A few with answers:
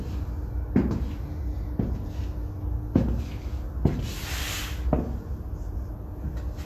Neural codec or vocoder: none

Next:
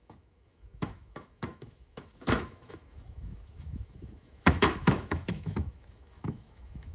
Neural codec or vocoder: autoencoder, DAC-VAE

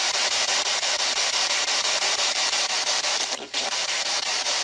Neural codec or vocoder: vocoder, BigVGAN v2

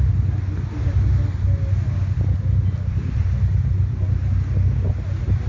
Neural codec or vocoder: none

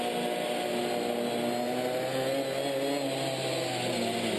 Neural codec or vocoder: none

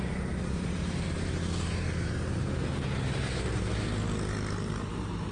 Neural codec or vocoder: none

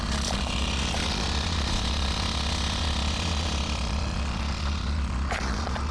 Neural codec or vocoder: vocoder, Vocos